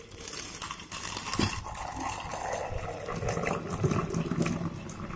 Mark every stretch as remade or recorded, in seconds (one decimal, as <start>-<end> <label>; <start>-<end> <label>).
0.0-5.2 recorded